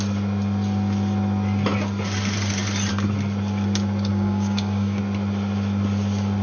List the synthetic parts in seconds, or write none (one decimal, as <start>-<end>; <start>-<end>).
4.1-5.0